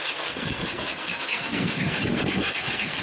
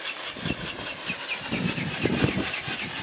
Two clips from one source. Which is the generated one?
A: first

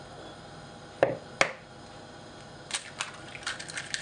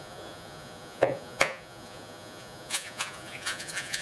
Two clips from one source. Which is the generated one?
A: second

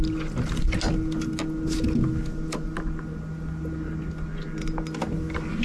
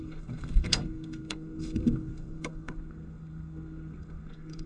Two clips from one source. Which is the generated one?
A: second